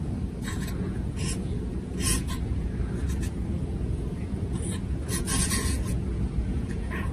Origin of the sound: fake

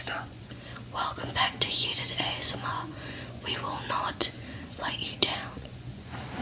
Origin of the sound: fake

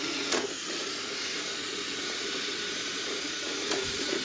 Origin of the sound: fake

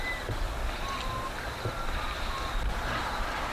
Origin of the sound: real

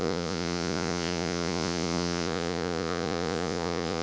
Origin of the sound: fake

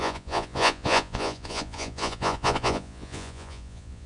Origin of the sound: fake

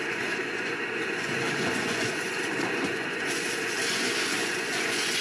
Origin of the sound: fake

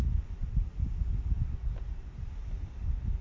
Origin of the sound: real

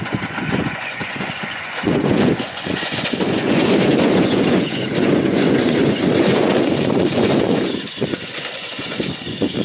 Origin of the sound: fake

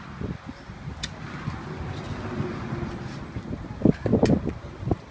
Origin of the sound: real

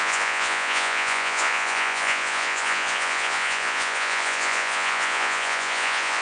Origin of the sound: fake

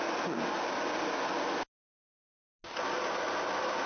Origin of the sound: real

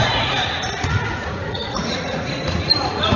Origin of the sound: fake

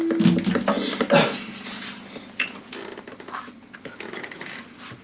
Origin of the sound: real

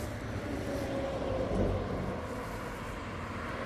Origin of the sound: real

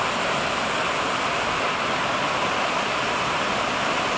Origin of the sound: real